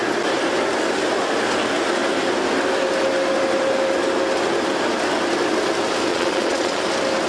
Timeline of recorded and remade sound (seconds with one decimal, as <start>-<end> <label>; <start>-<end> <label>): 0.0-6.1 recorded; 6.1-6.8 remade; 6.8-7.3 recorded